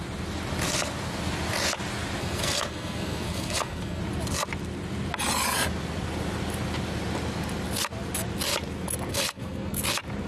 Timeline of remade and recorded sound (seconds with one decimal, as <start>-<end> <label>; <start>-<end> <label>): 0.0-2.2 recorded; 2.2-4.0 remade; 4.0-9.1 recorded; 9.1-9.8 remade; 9.8-10.3 recorded